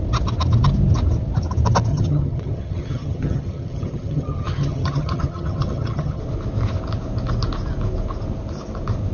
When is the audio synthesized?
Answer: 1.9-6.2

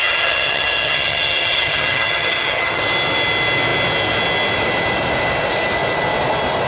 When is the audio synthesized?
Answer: 0.0-2.8